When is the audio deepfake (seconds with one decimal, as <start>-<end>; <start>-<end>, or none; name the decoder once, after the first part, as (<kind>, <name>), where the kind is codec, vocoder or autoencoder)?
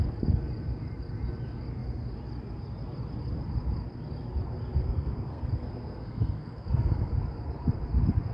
4.8-7.2 (codec, SNAC)